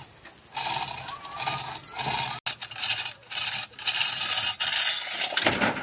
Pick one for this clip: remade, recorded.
recorded